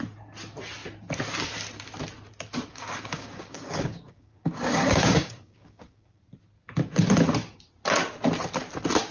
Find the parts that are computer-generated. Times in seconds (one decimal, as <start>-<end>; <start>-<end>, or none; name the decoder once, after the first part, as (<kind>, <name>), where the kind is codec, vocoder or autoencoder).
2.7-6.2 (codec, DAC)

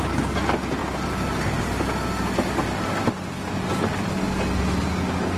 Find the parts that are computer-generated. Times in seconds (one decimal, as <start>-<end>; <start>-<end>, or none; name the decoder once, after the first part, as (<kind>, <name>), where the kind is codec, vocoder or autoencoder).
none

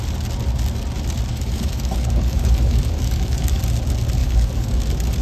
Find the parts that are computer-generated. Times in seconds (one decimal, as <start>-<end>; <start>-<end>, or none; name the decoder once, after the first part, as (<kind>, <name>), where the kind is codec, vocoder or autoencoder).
1.3-3.6 (codec, DAC); 4.2-4.8

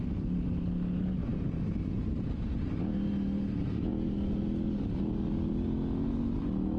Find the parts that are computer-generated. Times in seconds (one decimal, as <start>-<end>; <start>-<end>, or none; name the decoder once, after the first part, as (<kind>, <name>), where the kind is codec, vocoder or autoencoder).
none

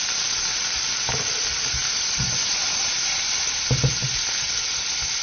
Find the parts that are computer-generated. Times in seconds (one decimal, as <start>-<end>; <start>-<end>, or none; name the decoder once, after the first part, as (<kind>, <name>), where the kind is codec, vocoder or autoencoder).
none

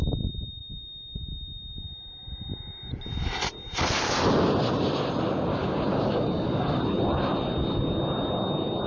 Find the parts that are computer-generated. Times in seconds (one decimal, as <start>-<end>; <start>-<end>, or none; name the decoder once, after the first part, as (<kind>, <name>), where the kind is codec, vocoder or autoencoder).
5.5-6.8 (codec, DAC)

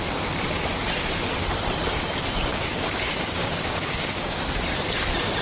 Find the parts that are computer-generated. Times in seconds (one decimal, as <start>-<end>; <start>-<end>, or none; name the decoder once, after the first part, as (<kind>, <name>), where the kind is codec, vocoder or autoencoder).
2.5-4.4 (codec, DAC)